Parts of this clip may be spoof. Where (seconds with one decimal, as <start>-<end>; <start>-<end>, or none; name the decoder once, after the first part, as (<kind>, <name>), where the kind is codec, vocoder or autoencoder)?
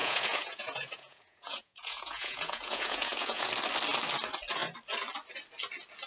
0.0-3.5 (vocoder, Vocos)